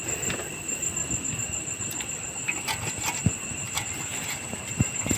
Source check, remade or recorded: recorded